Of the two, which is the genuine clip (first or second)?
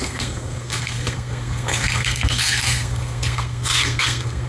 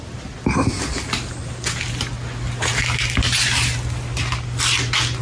second